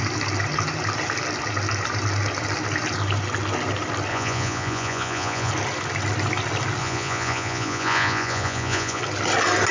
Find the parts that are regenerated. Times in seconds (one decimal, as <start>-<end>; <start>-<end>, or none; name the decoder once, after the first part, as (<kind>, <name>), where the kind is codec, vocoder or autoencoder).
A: 4.1-5.5 (vocoder, Vocos); 6.8-9.0